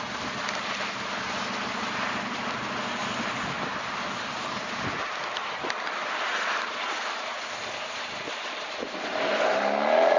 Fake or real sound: real